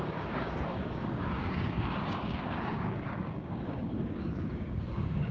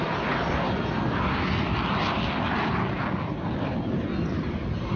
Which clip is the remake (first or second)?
first